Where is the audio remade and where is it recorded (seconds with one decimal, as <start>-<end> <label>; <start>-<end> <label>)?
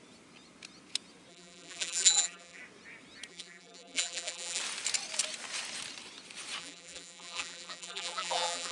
0.0-1.3 recorded; 1.3-2.6 remade; 2.6-3.3 recorded; 3.3-4.6 remade; 4.6-6.6 recorded; 6.6-8.7 remade